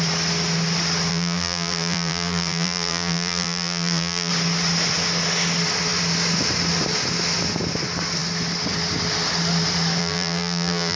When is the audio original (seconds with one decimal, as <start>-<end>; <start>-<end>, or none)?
0.0-1.1; 4.3-10.0